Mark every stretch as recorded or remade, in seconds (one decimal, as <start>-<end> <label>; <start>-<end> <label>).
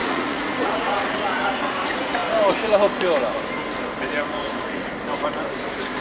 0.0-2.2 remade; 2.2-4.2 recorded; 4.2-4.9 remade; 4.9-6.0 recorded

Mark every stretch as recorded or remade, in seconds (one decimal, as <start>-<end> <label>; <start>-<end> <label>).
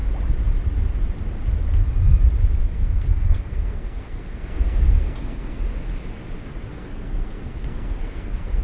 0.0-2.6 recorded; 2.6-5.6 remade; 5.6-6.7 recorded; 6.7-8.6 remade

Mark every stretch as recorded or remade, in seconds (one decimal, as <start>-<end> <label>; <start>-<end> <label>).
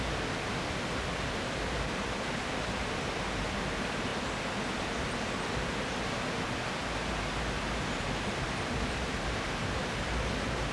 0.0-10.7 recorded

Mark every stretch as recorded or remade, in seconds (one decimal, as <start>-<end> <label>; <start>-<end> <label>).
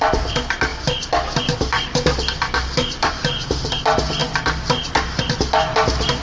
0.0-6.2 recorded